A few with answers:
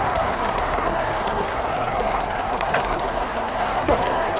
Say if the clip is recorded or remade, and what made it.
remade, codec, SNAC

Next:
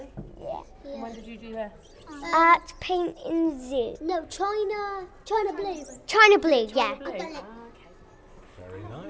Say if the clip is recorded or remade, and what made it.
recorded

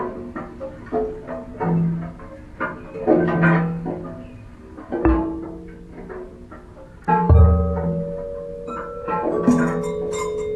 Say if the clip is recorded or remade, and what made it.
recorded